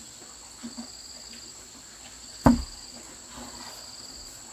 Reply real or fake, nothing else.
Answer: real